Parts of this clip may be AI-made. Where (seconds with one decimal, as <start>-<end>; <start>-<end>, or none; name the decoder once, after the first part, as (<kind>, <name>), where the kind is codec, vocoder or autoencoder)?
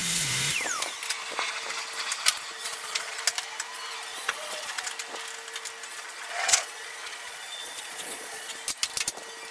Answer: 2.6-3.2 (vocoder, Vocos); 4.1-4.9; 5.9-8.5